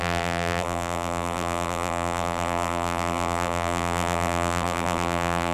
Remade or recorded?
remade